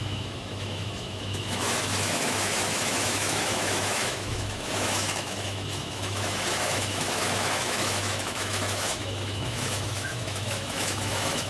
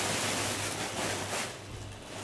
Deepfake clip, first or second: first